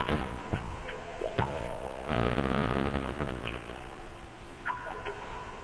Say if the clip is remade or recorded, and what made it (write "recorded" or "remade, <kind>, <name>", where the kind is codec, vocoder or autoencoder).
remade, vocoder, Vocos